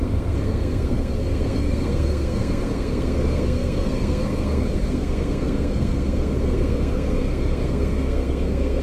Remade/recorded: remade